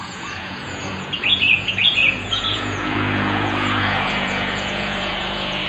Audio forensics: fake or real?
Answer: fake